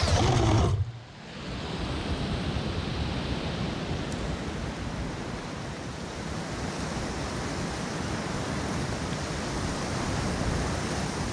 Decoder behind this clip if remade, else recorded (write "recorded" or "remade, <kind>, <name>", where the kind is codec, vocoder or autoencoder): recorded